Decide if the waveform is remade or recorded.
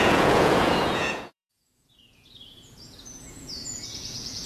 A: remade